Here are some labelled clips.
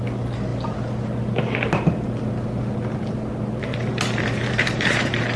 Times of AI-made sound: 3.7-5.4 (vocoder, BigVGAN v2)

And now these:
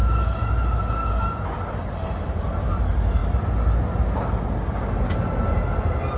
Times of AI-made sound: none

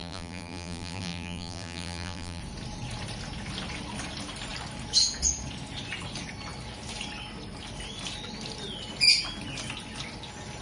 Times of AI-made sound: 0.0-2.4 (vocoder, BigVGAN v2)

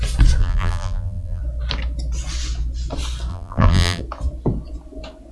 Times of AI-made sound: 0.4-1.4 (vocoder, BigVGAN v2); 3.3-4.0

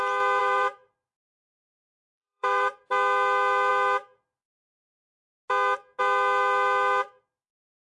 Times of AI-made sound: 0.4-2.8 (vocoder, BigVGAN v2)